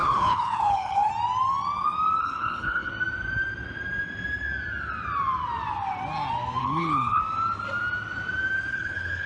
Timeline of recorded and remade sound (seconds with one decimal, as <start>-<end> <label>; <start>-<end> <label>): 0.0-1.1 remade; 1.1-2.2 recorded; 2.2-2.9 remade; 2.9-6.6 recorded; 6.6-7.2 remade; 7.2-8.7 recorded; 8.7-9.3 remade